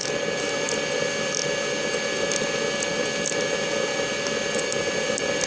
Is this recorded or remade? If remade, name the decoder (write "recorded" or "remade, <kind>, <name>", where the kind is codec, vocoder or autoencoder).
recorded